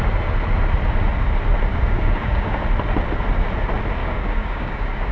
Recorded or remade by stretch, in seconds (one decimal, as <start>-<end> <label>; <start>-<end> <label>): 0.0-1.7 recorded; 1.7-2.6 remade; 2.6-4.0 recorded; 4.0-5.1 remade